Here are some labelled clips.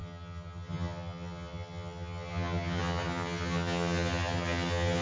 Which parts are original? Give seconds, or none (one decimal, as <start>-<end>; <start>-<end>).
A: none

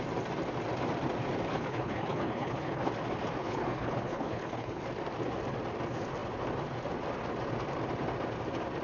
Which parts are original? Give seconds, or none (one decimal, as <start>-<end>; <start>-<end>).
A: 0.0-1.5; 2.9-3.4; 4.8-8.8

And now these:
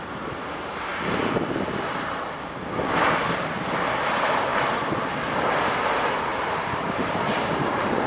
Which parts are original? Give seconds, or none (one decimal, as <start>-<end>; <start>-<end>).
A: 0.0-4.5; 5.5-6.3

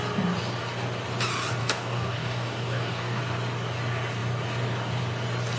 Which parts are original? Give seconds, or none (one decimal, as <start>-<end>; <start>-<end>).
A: 0.0-1.6; 3.2-5.6